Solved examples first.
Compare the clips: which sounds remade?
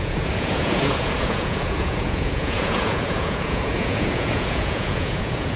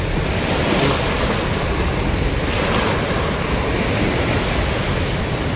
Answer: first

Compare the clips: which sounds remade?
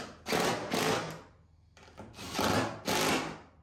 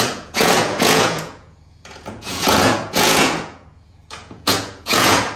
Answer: second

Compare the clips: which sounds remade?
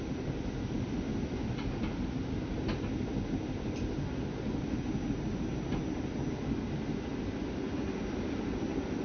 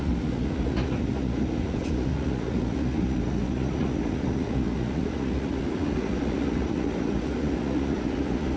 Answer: second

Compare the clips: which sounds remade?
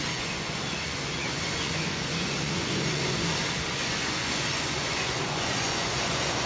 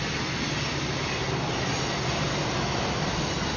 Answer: first